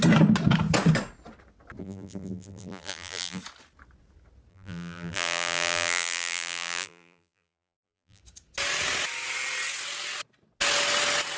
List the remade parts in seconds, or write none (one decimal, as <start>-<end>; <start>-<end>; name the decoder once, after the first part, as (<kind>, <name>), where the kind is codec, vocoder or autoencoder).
1.8-3.4 (vocoder, BigVGAN v2); 4.5-8.2